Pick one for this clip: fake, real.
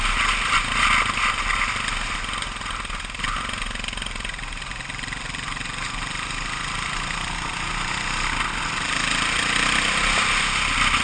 real